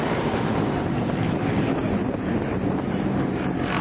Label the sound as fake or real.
fake